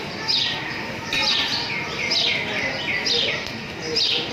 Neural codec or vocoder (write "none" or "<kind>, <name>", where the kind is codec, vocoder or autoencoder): none